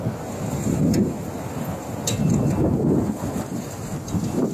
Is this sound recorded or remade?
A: remade